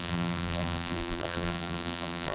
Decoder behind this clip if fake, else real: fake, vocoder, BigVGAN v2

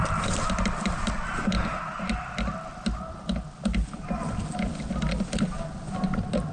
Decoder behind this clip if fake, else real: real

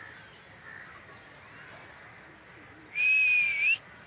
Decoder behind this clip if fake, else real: real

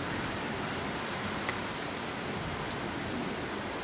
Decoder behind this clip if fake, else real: real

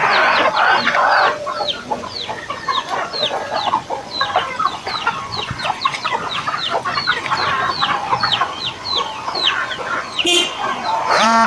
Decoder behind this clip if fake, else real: fake, vocoder, Vocos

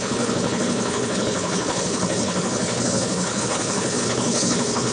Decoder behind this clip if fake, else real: fake, codec, HILCodec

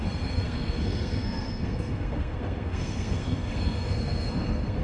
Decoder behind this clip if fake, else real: fake, codec, SNAC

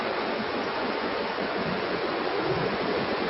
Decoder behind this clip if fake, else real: fake, vocoder, Vocos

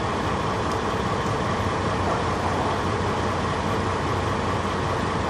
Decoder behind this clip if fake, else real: real